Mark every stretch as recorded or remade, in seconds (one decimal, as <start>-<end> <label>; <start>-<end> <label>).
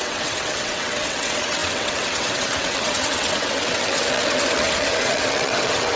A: 0.0-6.0 remade